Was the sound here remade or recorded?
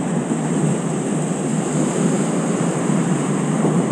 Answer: recorded